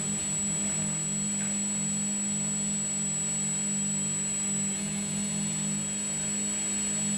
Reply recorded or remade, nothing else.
recorded